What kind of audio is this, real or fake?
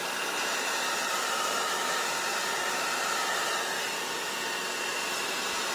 fake